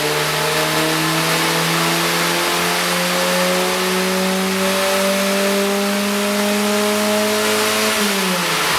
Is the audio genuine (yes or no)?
yes